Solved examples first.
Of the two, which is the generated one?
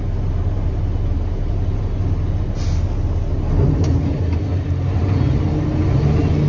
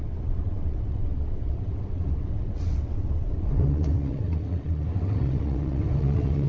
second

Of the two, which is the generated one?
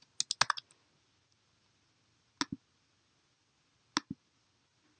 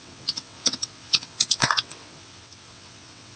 second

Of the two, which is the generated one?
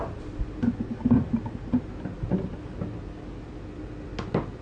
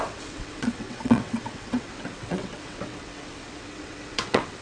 second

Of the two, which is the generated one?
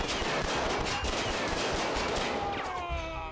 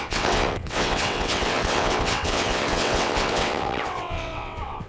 second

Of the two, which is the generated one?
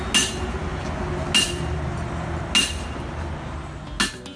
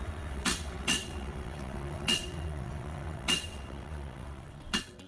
second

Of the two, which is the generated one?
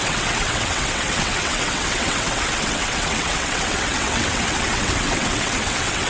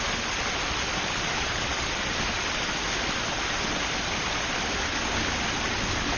first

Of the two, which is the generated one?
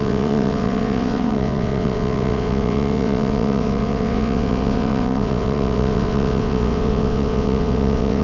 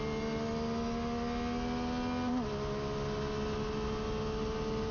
first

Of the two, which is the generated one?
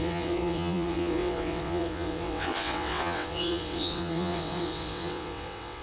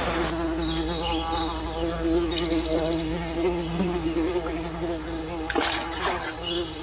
first